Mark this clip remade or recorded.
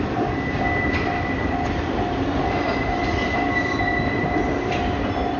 recorded